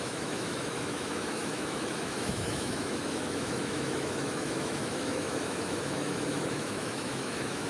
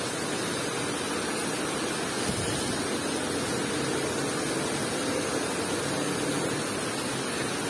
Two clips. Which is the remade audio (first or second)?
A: first